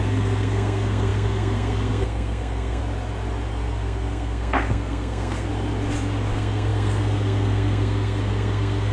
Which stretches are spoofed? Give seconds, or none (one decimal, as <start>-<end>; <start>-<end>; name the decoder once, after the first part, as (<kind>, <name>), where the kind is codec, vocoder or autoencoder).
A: 0.0-2.8 (codec, SNAC); 3.5-5.5; 6.3-8.9